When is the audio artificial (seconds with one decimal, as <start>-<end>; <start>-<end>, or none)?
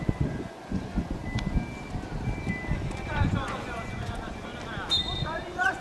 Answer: 0.0-1.2; 3.0-4.5; 5.2-5.8